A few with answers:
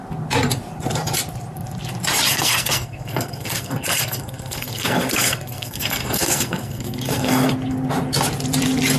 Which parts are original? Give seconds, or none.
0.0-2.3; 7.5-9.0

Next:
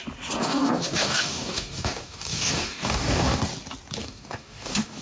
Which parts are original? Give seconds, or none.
0.0-0.4; 3.4-4.0

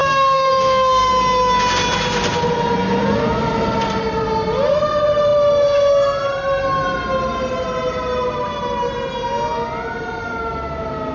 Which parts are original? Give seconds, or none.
1.1-11.1

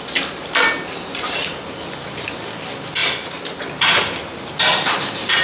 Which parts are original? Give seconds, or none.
0.0-5.4

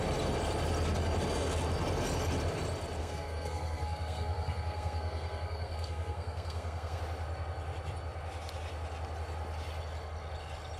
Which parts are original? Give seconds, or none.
0.0-3.0; 7.0-10.8

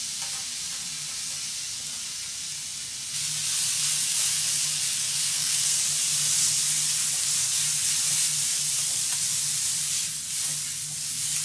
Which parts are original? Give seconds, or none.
0.0-5.3; 5.8-11.4

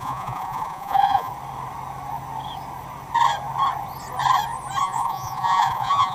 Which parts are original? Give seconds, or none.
1.3-4.8

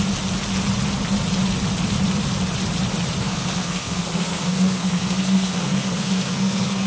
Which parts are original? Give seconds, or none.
0.0-3.2